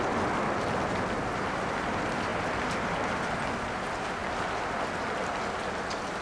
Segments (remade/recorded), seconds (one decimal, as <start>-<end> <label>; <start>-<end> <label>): 0.0-6.2 recorded